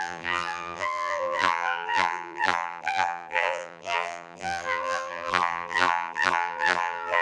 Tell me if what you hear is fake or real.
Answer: fake